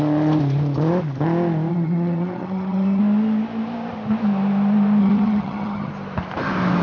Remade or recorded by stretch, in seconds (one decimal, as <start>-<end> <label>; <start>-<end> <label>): 0.0-1.7 recorded; 1.7-3.0 remade; 3.0-5.0 recorded; 5.0-5.9 remade; 5.9-6.8 recorded